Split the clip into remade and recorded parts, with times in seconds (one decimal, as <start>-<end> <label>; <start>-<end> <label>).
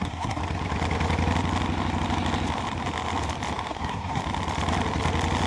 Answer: 0.0-0.4 remade; 0.4-3.7 recorded; 3.7-4.2 remade; 4.2-5.5 recorded